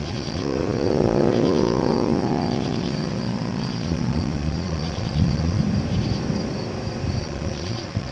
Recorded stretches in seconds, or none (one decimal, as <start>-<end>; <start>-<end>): 5.6-7.2